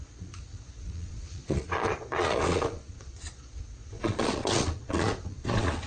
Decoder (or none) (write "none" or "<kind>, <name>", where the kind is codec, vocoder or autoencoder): vocoder, Vocos